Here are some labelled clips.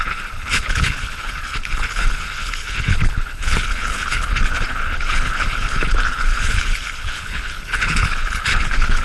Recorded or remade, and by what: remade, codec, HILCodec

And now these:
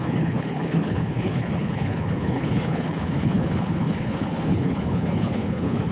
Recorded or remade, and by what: remade, codec, HILCodec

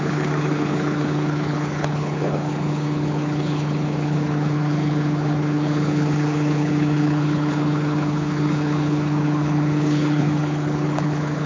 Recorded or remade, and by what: remade, codec, HILCodec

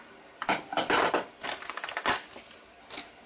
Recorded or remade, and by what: recorded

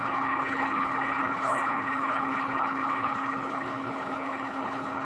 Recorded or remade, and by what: remade, codec, HILCodec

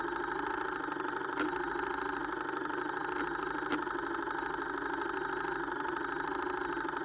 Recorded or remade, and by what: recorded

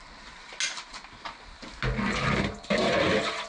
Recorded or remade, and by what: recorded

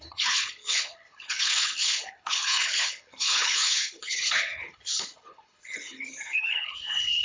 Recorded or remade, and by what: remade, codec, HILCodec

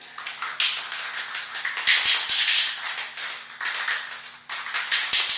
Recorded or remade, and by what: recorded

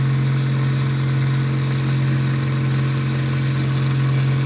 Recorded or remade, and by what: recorded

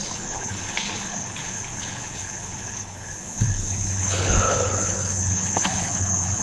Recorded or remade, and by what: remade, codec, HILCodec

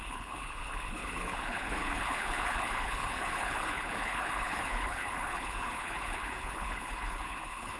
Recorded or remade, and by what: remade, codec, HILCodec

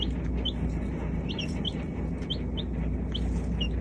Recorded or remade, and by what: recorded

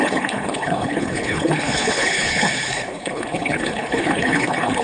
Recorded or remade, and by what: remade, codec, HILCodec